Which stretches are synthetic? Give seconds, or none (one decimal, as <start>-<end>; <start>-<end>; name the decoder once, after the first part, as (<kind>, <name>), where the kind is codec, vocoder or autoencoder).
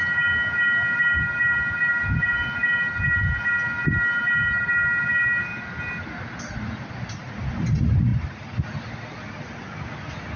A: none